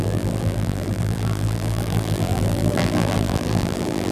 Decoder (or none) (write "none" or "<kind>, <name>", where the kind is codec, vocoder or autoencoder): vocoder, BigVGAN v2